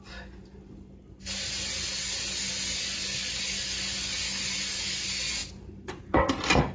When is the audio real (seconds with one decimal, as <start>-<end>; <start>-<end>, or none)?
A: 0.0-5.4; 6.3-6.7